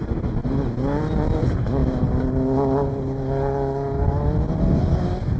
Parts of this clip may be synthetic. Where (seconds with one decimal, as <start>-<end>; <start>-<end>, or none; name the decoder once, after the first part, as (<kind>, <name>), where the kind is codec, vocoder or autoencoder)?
none